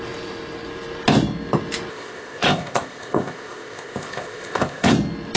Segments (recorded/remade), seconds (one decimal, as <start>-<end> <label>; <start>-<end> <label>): 0.0-1.9 recorded; 1.9-4.9 remade; 4.9-5.4 recorded